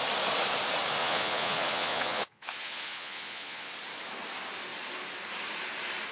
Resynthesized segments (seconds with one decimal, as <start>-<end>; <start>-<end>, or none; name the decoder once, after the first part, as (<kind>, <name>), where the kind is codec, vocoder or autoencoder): 1.0-3.7 (vocoder, Vocos)